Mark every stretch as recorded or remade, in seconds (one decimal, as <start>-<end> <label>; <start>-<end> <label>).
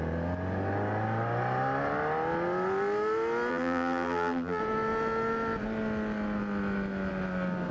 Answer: 0.0-3.5 recorded; 3.5-4.6 remade; 4.6-7.7 recorded